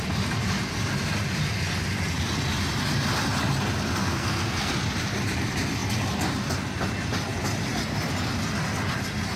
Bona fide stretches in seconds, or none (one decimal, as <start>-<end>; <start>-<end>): 0.0-4.0; 4.7-9.4